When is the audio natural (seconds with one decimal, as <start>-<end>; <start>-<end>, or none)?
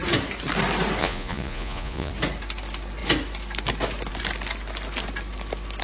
0.0-1.0; 2.1-5.8